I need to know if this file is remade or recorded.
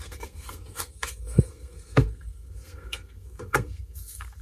remade